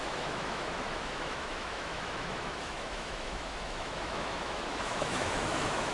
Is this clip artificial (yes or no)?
yes